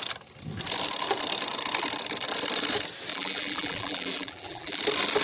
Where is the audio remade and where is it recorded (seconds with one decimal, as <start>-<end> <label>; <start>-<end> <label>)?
0.0-3.1 recorded; 3.1-4.8 remade; 4.8-5.2 recorded

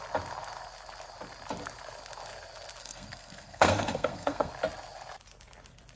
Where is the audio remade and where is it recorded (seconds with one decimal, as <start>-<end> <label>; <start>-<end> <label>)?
0.0-2.8 recorded; 2.8-4.5 remade; 4.5-6.0 recorded

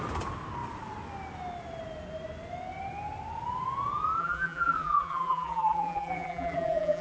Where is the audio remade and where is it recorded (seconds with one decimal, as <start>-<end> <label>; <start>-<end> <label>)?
0.0-4.2 recorded; 4.2-7.0 remade